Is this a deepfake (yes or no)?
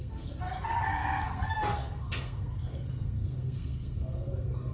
yes